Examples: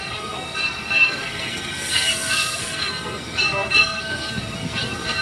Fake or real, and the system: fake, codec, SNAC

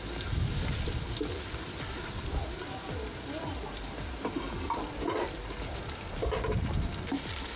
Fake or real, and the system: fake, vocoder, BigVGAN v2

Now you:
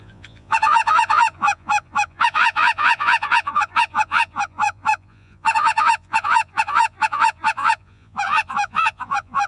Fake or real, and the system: fake, vocoder, Vocos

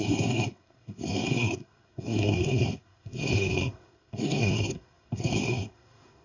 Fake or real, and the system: fake, codec, SNAC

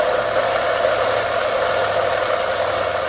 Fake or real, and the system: real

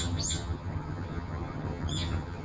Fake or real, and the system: fake, vocoder, HiFi-GAN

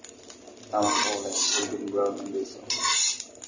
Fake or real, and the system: real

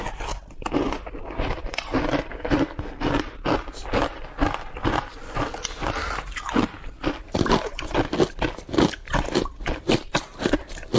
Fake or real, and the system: real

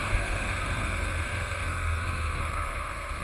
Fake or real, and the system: fake, codec, SNAC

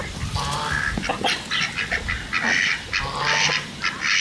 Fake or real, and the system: real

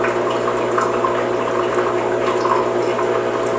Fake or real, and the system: real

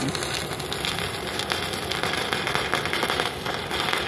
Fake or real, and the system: real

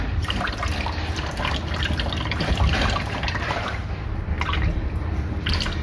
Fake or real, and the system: fake, vocoder, BigVGAN v2